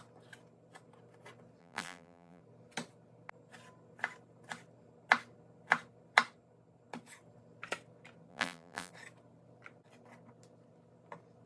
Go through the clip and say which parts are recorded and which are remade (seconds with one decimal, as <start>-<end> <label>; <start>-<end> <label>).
0.0-1.6 recorded; 1.6-2.4 remade; 2.4-8.3 recorded; 8.3-8.9 remade; 8.9-11.5 recorded